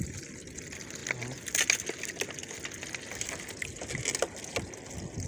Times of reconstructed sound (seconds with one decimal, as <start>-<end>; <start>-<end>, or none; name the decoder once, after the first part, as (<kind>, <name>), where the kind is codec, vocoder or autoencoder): none